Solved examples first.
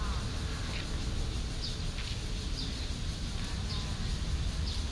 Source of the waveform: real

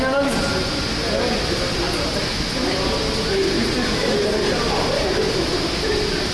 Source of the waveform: real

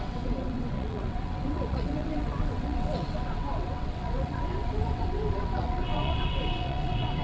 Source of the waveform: fake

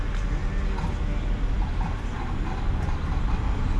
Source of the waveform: real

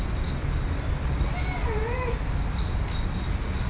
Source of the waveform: real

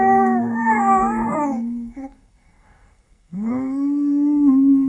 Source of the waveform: fake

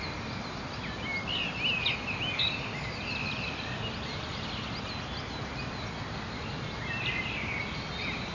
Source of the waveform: real